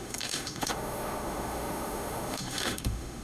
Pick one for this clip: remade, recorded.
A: remade